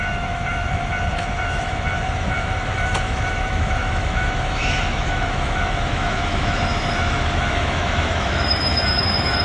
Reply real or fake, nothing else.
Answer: fake